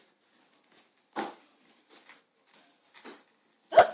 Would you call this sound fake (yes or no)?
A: no